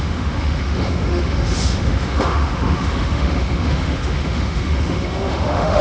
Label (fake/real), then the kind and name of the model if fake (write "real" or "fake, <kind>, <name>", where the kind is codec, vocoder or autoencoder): fake, autoencoder, DAC-VAE